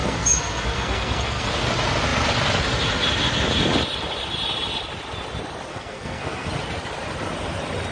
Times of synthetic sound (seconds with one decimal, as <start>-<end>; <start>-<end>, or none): 0.0-1.5; 5.7-6.5